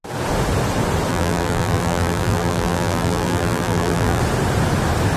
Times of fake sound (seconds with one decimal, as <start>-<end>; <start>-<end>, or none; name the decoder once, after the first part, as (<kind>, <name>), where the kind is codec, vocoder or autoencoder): 1.1-4.2 (vocoder, BigVGAN v2)